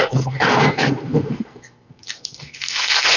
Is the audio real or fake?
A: fake